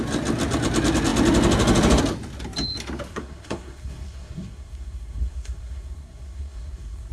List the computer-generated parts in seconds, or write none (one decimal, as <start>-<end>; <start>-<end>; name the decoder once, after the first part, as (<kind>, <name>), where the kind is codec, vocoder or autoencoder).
3.1-7.1 (codec, SNAC)